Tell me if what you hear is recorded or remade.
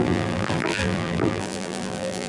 remade